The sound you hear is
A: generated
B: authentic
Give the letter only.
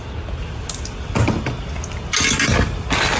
B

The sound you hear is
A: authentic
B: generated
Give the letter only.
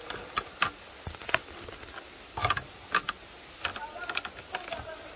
A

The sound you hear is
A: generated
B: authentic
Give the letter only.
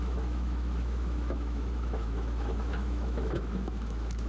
A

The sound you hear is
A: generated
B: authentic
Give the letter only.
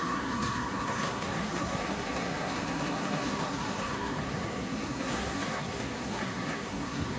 A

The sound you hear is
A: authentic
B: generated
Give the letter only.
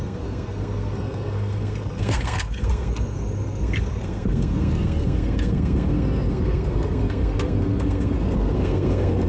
B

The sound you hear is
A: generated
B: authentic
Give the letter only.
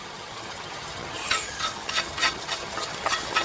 A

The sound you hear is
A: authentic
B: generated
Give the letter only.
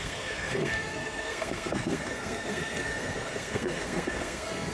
B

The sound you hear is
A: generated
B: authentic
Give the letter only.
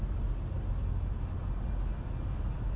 B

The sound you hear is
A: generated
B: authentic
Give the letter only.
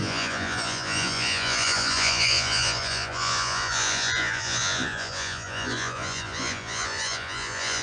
A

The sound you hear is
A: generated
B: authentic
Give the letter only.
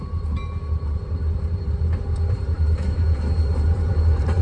A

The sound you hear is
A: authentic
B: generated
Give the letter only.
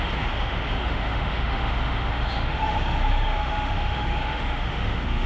B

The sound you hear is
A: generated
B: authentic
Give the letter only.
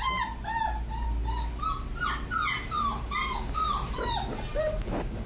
B